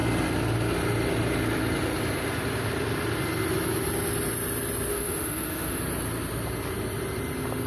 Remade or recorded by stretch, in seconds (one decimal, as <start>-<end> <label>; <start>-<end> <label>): 0.0-4.9 recorded; 4.9-5.8 remade; 5.8-7.7 recorded